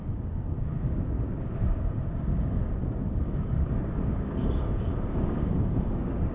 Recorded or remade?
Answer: remade